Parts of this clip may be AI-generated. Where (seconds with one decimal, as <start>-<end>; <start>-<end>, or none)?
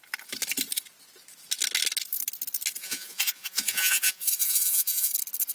2.8-5.1